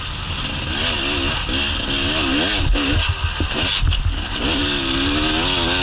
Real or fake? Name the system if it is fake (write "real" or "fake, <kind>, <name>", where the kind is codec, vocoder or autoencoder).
real